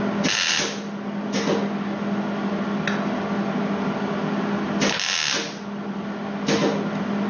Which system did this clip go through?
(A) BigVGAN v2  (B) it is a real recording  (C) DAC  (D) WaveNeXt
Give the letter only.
B